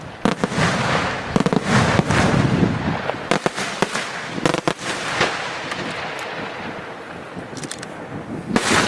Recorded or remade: recorded